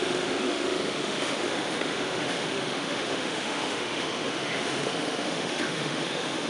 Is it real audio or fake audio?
fake